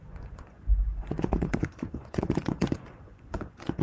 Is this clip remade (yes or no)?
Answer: yes